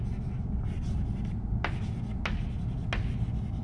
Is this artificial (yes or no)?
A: no